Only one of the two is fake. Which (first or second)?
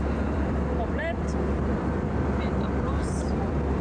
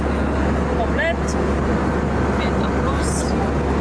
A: first